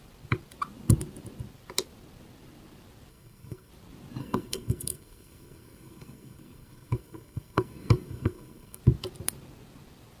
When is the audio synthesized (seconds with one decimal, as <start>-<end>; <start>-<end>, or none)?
3.1-3.7; 4.2-8.8